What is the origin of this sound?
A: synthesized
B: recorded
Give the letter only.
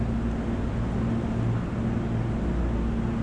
B